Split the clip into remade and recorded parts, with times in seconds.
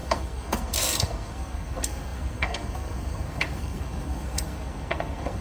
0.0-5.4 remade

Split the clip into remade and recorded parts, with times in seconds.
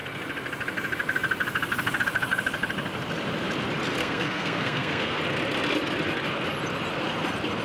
0.0-4.0 recorded; 4.0-5.2 remade; 5.2-7.6 recorded